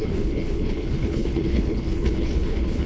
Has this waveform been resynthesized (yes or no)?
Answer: yes